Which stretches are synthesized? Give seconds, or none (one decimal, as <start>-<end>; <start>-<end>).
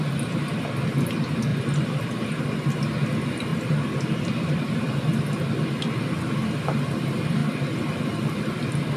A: 1.5-2.4; 3.5-5.1; 7.4-9.0